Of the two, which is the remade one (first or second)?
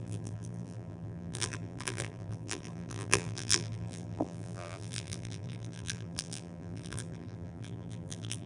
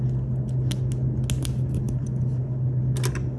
first